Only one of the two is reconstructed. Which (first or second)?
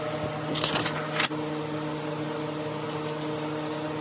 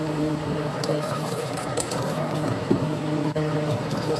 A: second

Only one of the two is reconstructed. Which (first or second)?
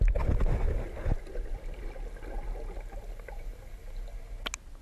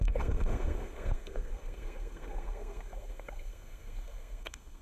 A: second